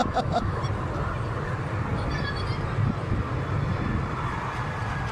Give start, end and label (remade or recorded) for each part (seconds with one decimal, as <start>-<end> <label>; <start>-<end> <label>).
0.0-0.6 remade; 0.6-5.1 recorded